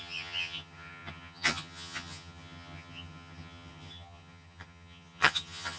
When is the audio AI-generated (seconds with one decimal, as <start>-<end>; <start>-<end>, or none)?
0.0-5.8